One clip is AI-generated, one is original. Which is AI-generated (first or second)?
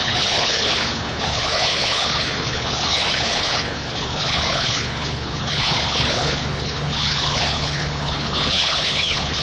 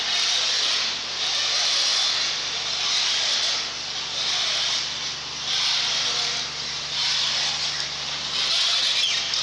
first